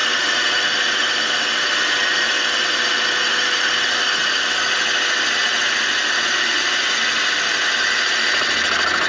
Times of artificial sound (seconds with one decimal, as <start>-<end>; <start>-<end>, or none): none